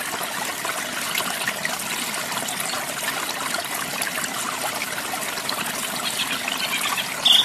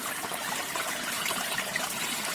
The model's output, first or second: second